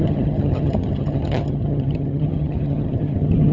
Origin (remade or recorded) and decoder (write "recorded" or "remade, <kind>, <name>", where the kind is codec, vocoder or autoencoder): remade, vocoder, HiFi-GAN